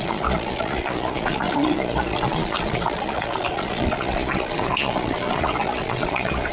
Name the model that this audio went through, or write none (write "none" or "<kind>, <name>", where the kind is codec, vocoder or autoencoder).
vocoder, Vocos